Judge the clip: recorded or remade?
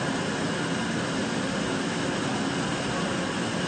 recorded